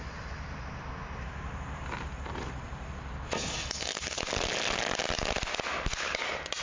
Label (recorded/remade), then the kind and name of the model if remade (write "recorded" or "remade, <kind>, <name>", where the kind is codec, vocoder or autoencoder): recorded